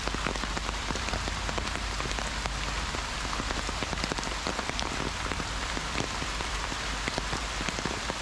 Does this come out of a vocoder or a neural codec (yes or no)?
yes